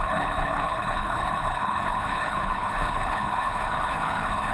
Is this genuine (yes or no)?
no